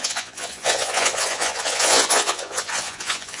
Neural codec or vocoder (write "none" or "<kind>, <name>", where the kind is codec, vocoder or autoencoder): vocoder, Vocos